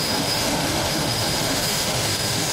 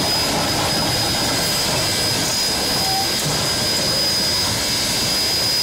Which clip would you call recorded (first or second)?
second